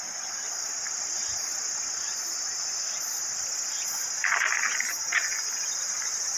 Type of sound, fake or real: real